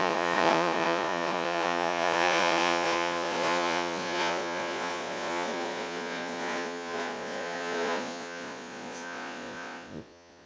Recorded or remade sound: remade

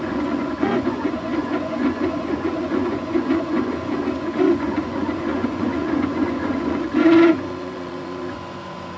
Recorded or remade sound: remade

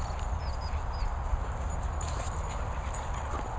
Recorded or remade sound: recorded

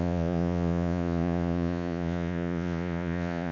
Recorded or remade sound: remade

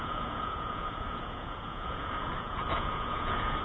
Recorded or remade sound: remade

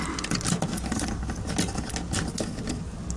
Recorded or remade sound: recorded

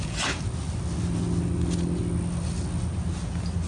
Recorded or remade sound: recorded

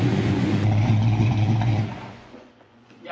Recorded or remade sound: remade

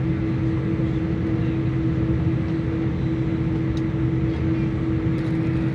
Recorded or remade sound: recorded